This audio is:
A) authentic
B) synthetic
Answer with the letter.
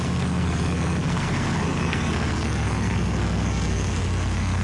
B